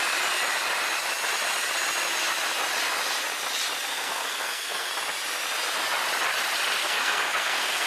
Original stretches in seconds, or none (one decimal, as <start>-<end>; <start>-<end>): 0.0-3.9; 4.9-6.8